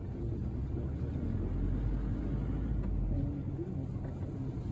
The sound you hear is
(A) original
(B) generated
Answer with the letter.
A